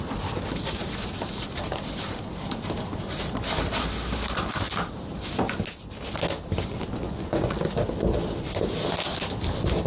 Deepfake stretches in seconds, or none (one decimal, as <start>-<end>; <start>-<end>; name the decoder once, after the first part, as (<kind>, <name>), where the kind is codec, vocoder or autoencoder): 7.0-7.6 (vocoder, Vocos)